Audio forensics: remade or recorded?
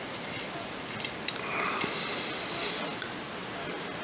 recorded